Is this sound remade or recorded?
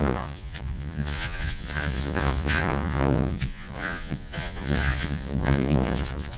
remade